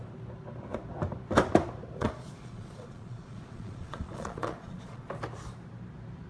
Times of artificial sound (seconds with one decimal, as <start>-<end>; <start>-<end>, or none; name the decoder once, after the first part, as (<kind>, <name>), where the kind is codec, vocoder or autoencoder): 2.0-5.1 (vocoder, Vocos)

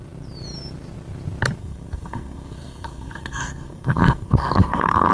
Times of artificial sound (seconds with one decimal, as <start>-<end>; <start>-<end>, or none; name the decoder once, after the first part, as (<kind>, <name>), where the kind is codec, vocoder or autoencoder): 1.6-5.1 (codec, SNAC)